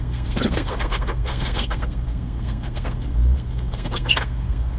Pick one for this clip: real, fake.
fake